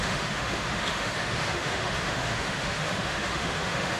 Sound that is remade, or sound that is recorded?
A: remade